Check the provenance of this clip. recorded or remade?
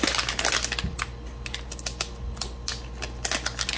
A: recorded